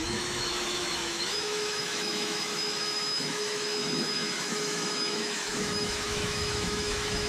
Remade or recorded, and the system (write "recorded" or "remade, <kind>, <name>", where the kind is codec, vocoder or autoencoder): remade, autoencoder, DAC-VAE